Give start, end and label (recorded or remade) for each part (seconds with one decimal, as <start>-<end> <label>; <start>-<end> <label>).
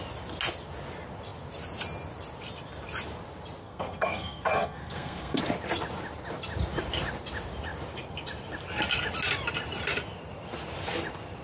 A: 0.0-3.6 recorded; 3.6-5.4 remade; 5.4-11.4 recorded